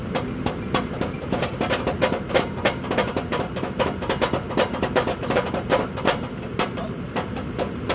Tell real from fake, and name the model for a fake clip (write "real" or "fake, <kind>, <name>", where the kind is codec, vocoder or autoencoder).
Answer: fake, vocoder, BigVGAN v2